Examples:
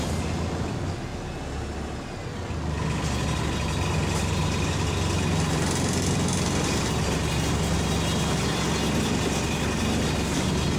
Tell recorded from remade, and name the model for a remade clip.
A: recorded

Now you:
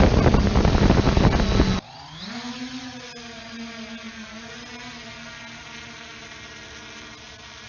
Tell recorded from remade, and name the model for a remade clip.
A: recorded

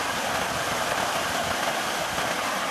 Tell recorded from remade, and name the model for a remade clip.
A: recorded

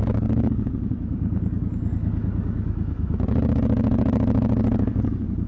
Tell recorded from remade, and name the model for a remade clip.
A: remade, codec, DAC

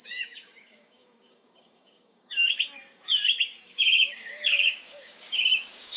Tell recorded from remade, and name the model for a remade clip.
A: remade, codec, DAC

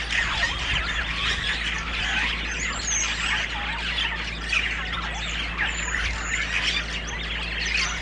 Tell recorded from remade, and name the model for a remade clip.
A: recorded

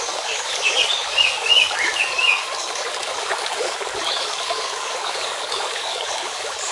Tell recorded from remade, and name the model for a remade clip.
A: remade, codec, DAC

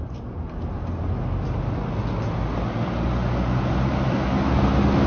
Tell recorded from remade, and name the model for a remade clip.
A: recorded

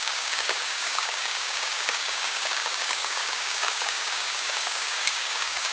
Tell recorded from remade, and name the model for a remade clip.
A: remade, codec, DAC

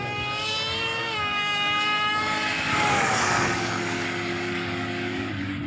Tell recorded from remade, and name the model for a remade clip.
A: remade, codec, DAC